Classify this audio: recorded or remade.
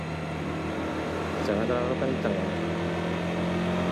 recorded